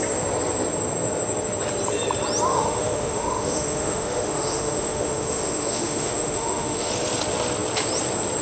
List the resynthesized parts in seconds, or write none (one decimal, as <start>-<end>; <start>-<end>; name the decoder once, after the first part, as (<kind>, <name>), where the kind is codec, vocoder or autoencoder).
2.5-6.9 (autoencoder, DAC-VAE)